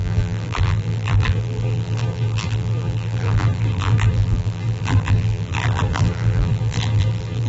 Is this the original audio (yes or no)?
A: no